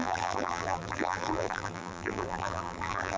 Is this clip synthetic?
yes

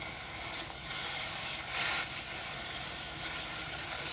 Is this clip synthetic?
yes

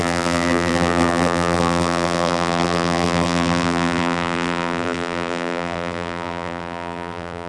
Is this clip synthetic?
yes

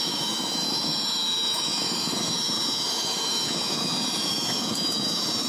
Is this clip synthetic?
yes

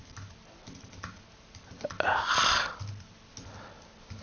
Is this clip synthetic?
no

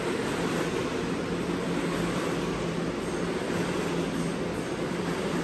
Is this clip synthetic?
no